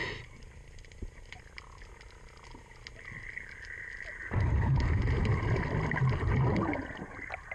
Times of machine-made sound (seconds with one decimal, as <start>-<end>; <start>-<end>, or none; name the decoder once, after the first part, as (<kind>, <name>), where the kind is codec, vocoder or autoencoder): none